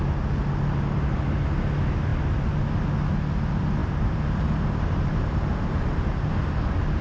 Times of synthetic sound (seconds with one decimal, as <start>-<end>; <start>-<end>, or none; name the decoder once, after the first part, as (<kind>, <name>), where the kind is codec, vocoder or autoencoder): 3.8-6.3 (vocoder, BigVGAN v2)